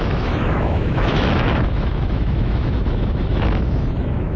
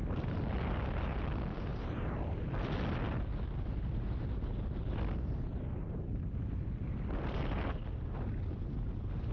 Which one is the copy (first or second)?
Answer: first